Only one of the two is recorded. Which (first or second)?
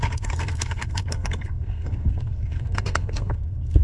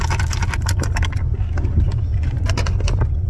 second